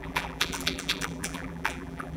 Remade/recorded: remade